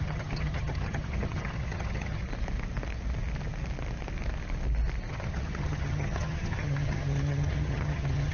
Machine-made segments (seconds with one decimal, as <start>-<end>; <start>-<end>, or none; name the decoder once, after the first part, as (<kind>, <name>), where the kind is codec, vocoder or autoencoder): 0.0-2.2 (vocoder, HiFi-GAN); 5.1-8.3